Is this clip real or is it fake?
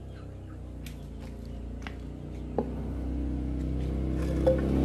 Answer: real